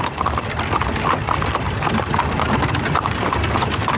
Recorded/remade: recorded